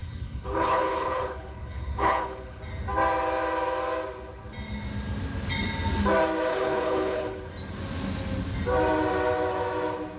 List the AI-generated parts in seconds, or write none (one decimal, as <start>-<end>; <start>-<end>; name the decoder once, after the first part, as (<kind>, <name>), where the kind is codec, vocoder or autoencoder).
0.0-2.6 (codec, HILCodec); 6.5-7.4